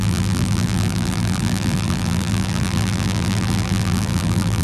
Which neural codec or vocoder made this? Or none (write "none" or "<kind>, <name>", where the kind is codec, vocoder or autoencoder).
vocoder, BigVGAN v2